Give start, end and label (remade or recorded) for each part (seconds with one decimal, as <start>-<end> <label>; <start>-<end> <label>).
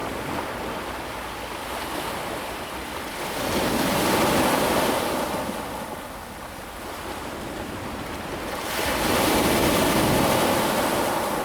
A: 0.0-0.6 remade; 0.6-9.6 recorded; 9.6-11.4 remade